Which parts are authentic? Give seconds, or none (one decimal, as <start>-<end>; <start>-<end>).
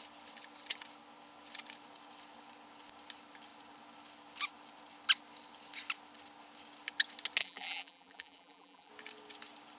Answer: 0.0-7.4; 8.9-9.8